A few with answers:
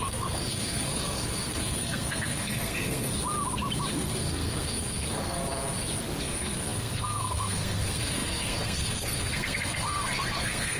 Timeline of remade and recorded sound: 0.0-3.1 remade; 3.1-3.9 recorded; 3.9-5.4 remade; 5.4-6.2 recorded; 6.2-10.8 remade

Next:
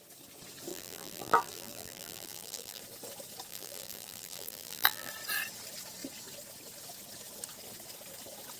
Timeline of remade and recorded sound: 0.0-0.7 recorded; 0.7-2.8 remade; 2.8-3.5 recorded; 3.5-5.1 remade; 5.1-8.6 recorded